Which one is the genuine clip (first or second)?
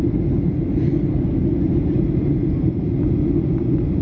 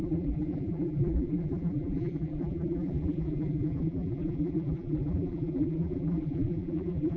first